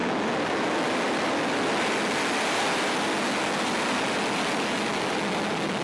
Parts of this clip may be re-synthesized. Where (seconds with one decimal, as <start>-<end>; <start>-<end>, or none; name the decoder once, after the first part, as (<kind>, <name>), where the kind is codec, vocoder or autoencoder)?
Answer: none